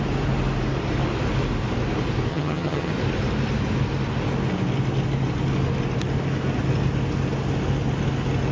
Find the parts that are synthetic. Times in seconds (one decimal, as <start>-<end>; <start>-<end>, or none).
2.3-2.9